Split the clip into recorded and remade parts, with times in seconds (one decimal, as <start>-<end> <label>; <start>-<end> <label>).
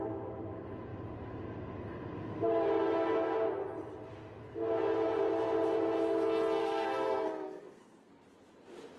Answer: 0.0-6.6 recorded; 6.6-8.1 remade; 8.1-9.0 recorded